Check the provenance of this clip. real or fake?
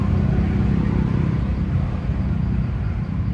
real